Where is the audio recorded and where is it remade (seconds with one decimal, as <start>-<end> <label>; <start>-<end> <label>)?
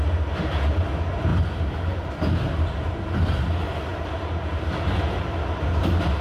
0.0-3.9 recorded; 3.9-5.7 remade; 5.7-6.2 recorded